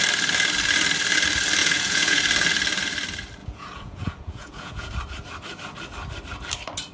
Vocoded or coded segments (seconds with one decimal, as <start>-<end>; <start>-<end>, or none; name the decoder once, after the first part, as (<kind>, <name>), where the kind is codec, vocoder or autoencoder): 1.6-2.2 (vocoder, Vocos); 3.4-4.9